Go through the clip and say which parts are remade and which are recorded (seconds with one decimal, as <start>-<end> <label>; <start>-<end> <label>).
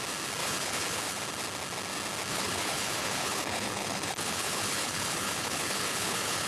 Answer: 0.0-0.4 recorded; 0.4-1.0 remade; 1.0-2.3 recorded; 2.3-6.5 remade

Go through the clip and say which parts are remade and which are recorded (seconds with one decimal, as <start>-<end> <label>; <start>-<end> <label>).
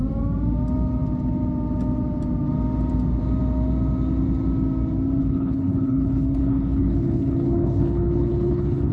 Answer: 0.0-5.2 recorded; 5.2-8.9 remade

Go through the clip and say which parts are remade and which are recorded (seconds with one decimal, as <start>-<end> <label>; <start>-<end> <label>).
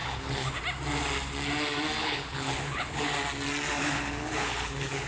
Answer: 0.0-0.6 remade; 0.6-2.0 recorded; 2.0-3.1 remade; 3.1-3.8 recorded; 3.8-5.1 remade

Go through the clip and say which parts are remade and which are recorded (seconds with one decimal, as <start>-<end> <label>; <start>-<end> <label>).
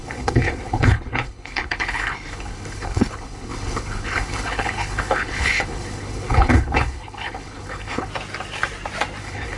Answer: 0.0-8.1 remade; 8.1-9.2 recorded; 9.2-9.6 remade